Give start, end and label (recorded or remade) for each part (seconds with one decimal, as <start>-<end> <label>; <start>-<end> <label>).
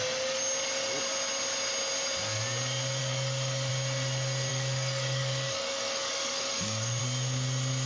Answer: 0.0-3.0 recorded; 3.0-3.7 remade; 3.7-4.5 recorded; 4.5-7.0 remade; 7.0-7.9 recorded